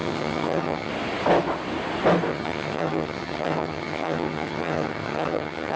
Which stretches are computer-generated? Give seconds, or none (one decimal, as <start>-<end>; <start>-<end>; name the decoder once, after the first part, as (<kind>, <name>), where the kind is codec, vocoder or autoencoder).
0.0-0.9 (vocoder, HiFi-GAN); 2.3-5.8